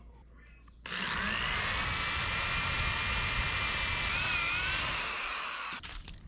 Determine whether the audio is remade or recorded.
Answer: recorded